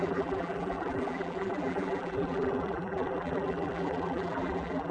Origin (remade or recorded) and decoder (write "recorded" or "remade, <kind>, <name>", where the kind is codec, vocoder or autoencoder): remade, vocoder, BigVGAN v2